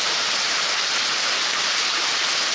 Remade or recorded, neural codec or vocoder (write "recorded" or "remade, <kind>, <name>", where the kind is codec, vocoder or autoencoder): remade, vocoder, BigVGAN v2